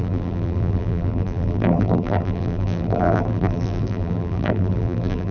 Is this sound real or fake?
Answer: fake